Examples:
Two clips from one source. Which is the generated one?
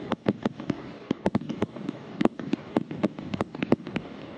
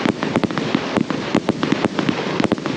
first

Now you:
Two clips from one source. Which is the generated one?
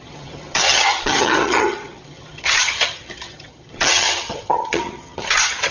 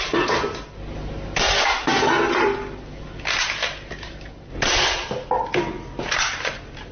first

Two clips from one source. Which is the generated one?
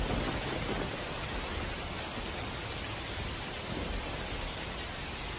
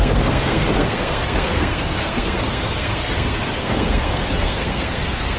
second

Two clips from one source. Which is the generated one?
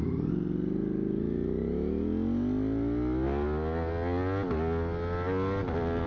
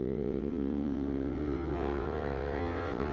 second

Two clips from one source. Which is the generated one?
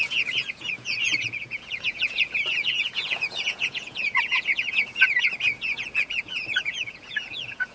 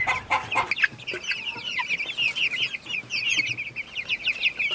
first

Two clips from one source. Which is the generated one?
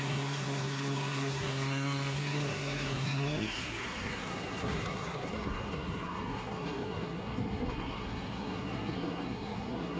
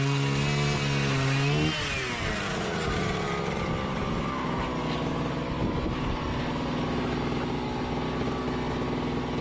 first